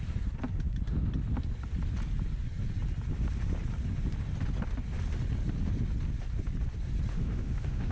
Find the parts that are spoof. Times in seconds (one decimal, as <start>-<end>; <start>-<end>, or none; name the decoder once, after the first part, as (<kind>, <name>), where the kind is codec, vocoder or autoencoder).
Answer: 7.1-7.9 (autoencoder, DAC-VAE)